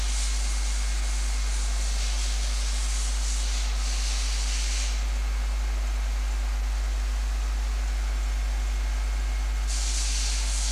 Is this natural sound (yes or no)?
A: yes